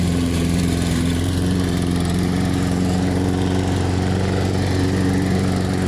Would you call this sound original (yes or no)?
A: no